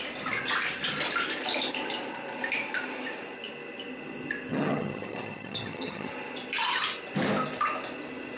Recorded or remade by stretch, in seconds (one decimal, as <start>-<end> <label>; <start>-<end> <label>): 0.0-4.5 recorded; 4.5-6.1 remade; 6.1-8.4 recorded